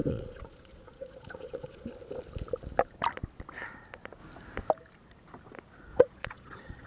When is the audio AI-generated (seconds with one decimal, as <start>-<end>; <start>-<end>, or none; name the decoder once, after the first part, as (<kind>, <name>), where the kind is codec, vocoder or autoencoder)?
0.0-1.9 (vocoder, Vocos); 5.9-6.9